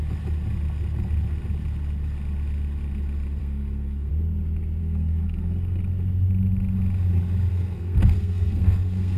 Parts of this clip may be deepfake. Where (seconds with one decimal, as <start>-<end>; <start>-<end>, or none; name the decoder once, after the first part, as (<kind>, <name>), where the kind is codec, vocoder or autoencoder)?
3.4-4.1 (codec, SNAC); 4.8-5.8; 7.5-9.2